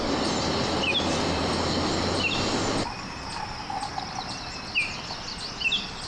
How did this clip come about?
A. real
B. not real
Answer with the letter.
A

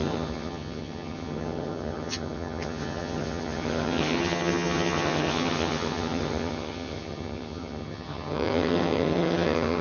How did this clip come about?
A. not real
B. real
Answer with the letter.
A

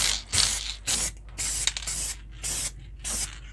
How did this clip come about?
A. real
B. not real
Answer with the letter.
A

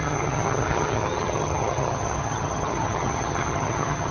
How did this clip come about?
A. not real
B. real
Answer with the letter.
A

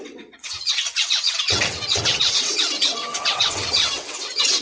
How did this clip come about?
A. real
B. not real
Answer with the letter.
B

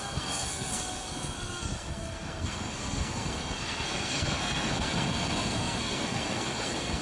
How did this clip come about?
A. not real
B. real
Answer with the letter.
A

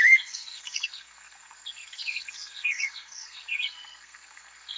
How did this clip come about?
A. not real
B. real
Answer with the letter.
A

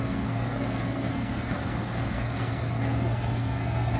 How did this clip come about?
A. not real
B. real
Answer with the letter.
A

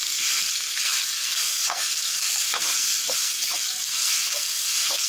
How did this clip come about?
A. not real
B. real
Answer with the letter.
A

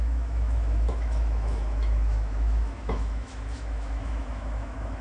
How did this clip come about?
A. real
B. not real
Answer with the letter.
B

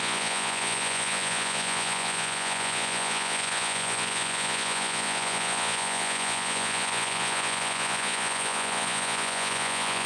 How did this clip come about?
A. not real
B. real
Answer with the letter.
A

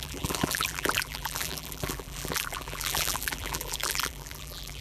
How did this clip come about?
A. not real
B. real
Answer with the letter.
A